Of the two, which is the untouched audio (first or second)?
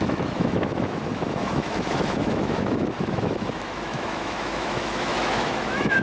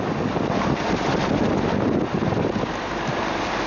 second